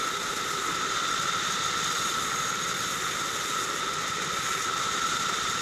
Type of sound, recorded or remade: recorded